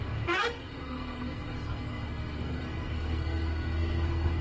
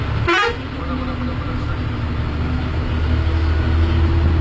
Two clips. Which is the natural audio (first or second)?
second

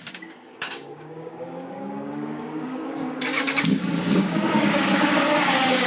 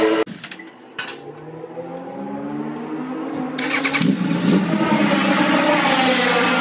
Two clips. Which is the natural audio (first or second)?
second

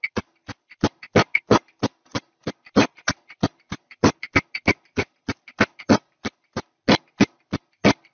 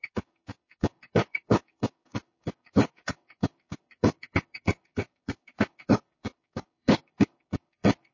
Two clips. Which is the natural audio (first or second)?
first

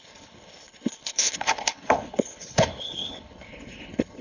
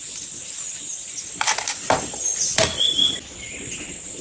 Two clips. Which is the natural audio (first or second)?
second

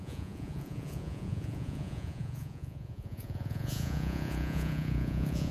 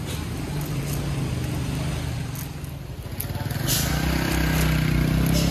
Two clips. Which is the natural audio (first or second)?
second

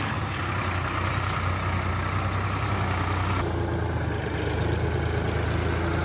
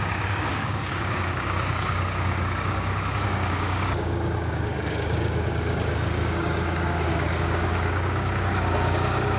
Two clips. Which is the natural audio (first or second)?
first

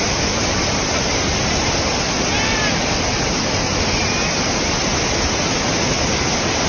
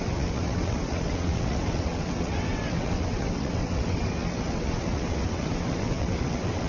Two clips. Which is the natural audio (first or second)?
first